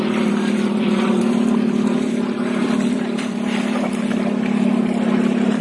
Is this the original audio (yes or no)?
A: no